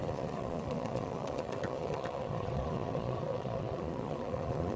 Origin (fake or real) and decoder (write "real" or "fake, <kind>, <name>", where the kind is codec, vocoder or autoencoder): fake, vocoder, Vocos